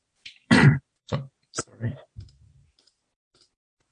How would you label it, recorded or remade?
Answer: remade